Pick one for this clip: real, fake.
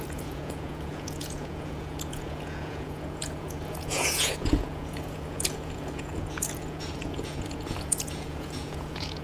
fake